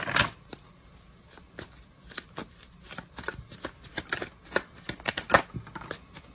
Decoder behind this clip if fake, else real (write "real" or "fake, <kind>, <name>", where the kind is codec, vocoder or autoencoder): real